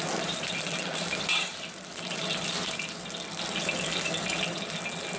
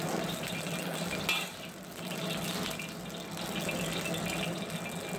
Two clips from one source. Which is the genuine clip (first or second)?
second